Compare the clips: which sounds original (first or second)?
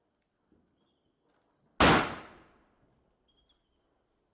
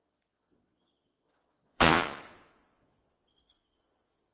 first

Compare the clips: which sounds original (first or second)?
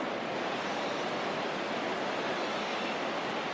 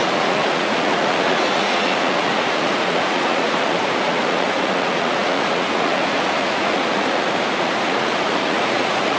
first